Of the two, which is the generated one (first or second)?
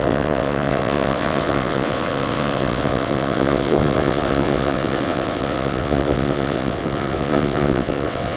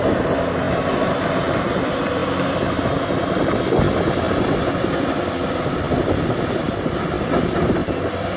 first